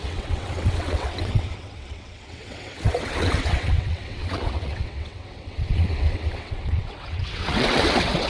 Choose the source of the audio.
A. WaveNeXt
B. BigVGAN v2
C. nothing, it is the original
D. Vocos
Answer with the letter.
A